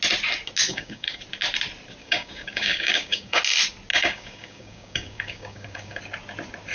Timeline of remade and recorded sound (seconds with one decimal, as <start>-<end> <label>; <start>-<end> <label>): 0.0-0.7 recorded; 0.7-1.2 remade; 1.2-2.0 recorded; 2.0-3.4 remade; 3.4-3.9 recorded; 3.9-6.0 remade; 6.0-6.7 recorded